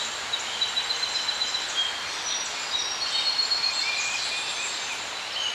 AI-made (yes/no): no